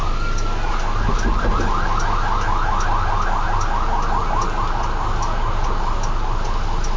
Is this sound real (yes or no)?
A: yes